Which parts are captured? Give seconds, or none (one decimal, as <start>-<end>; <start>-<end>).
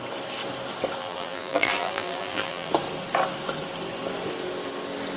0.0-1.0; 2.7-5.2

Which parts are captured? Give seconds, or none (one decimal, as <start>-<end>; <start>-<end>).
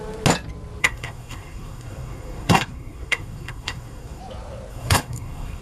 0.0-0.8; 4.2-4.7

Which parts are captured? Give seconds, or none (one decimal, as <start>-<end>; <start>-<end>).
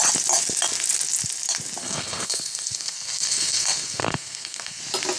0.0-1.8; 4.8-5.2